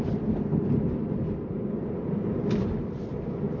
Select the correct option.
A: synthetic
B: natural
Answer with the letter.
B